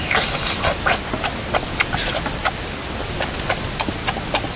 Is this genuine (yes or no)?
yes